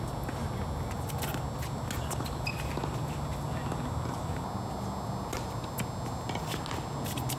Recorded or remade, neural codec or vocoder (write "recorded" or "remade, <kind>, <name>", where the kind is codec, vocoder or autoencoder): recorded